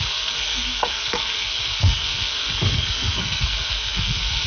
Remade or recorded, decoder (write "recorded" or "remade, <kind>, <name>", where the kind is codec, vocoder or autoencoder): remade, codec, SNAC